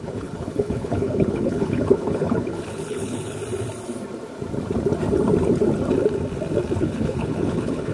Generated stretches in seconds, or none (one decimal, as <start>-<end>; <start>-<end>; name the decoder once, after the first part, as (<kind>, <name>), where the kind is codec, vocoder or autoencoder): 0.0-3.4 (codec, HILCodec); 6.8-7.9